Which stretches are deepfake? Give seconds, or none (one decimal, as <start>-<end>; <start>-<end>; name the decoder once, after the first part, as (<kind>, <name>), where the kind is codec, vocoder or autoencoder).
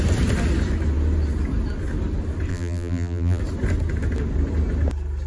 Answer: 2.5-3.4 (vocoder, BigVGAN v2)